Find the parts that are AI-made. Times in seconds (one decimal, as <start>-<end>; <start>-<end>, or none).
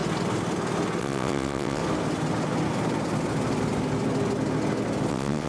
1.0-1.8; 5.1-5.5